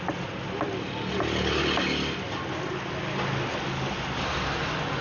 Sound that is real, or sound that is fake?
real